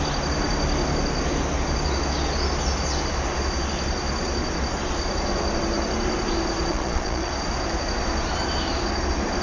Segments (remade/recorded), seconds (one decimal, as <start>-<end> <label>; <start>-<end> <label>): 0.0-6.7 recorded; 6.7-7.3 remade; 7.3-9.4 recorded